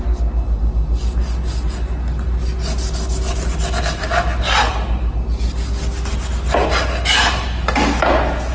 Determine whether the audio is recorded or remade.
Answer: recorded